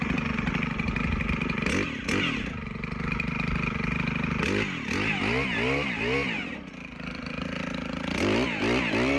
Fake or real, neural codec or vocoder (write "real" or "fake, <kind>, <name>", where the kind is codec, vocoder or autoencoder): real